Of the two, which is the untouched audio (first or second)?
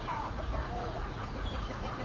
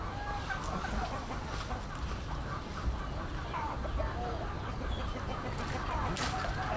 second